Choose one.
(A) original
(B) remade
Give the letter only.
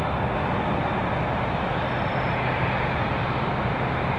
A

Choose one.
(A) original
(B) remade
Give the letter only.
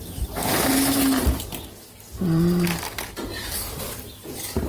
A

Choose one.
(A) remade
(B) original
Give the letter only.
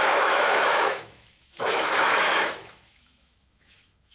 A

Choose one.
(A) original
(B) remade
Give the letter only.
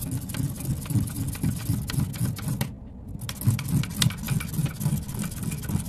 A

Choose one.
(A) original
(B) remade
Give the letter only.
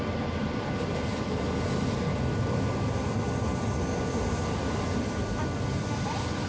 A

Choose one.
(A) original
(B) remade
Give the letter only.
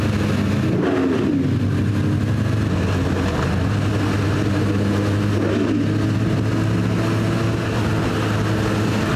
A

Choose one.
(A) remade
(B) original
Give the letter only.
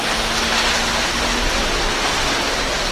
B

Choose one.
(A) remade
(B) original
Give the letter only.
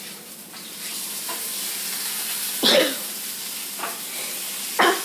B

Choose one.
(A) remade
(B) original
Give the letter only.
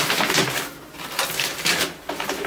B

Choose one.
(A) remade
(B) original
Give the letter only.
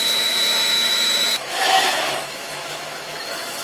A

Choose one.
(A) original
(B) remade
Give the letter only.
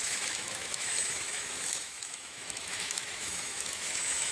B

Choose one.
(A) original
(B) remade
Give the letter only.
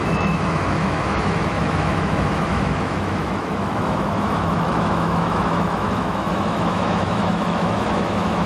B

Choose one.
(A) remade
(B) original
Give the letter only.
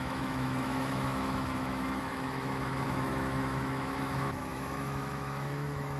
A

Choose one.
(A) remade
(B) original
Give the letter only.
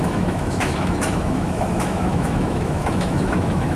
A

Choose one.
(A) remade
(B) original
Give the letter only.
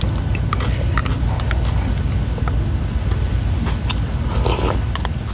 B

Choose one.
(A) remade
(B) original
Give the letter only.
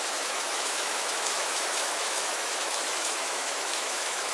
A